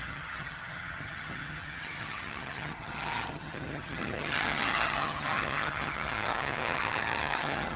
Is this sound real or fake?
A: fake